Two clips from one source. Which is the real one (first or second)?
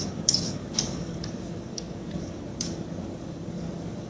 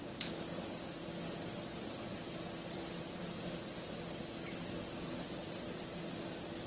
second